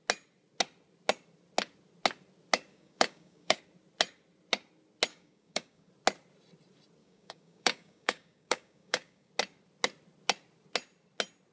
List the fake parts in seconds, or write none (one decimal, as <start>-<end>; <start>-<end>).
2.7-3.6; 5.1-5.9; 7.0-9.3